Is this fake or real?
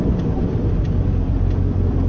fake